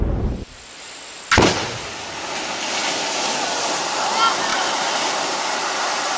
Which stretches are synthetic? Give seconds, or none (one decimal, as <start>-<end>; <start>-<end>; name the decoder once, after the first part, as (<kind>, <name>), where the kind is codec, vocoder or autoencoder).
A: 4.5-5.1 (vocoder, BigVGAN v2)